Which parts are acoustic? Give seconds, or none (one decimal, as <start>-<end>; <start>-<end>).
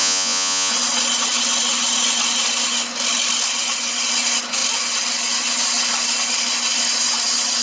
0.7-7.6